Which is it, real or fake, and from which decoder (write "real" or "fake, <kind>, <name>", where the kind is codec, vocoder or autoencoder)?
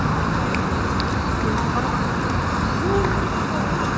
real